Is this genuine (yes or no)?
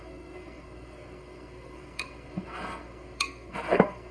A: no